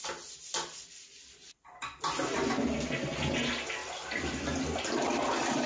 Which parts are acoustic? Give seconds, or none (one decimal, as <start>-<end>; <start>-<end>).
0.0-5.7